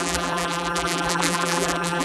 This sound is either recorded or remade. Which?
remade